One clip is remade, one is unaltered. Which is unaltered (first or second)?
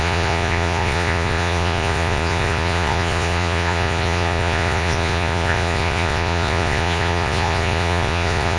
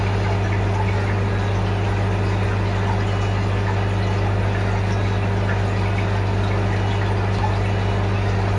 second